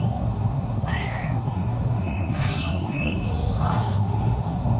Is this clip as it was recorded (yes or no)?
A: no